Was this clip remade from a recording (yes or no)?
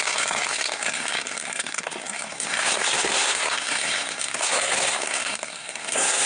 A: yes